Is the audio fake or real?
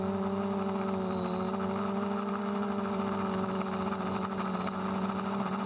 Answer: fake